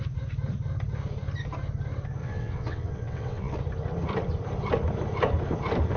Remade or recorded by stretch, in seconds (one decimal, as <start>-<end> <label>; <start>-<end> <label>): 0.0-2.2 recorded; 2.2-3.6 remade; 3.6-6.0 recorded